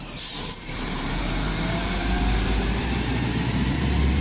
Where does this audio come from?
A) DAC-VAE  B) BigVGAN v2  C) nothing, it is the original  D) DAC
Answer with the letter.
B